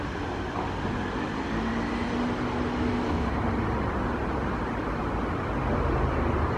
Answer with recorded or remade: recorded